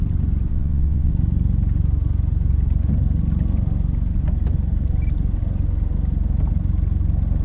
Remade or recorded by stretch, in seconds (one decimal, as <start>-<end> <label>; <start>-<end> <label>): 0.0-0.5 recorded; 0.5-1.1 remade; 1.1-7.4 recorded